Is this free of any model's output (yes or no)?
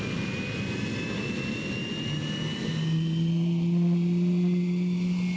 yes